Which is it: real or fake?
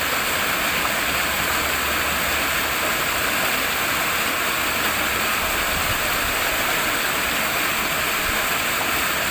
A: real